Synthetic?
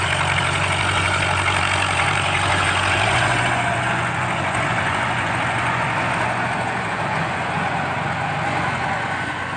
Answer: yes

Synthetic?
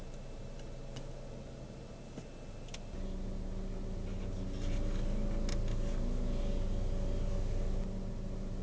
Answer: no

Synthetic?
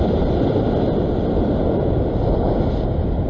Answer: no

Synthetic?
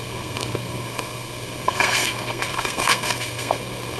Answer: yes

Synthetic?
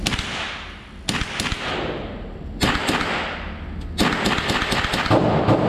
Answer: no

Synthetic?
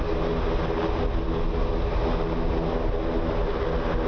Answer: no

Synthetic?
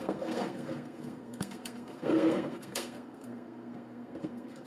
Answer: yes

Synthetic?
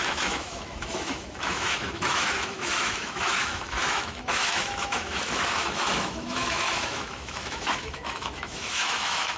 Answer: yes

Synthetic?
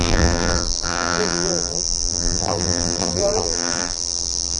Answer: yes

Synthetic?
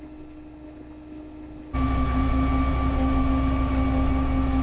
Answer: no